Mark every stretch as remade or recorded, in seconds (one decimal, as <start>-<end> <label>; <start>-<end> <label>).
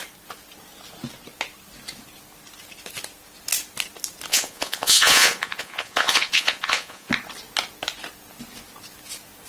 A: 0.0-4.3 recorded; 4.3-7.1 remade; 7.1-9.5 recorded